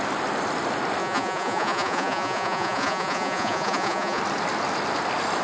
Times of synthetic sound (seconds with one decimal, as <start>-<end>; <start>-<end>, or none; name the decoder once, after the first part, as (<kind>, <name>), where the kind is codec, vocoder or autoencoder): 1.0-4.2 (vocoder, Vocos)